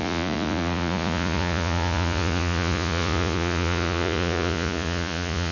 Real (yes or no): no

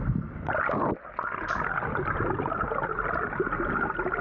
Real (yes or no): yes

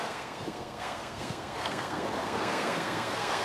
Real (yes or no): no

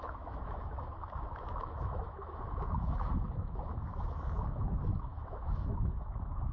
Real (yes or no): no